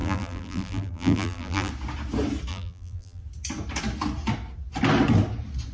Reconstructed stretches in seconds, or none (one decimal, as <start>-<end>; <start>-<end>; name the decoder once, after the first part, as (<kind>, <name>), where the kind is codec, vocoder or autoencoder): 0.0-1.7 (vocoder, BigVGAN v2); 2.5-3.2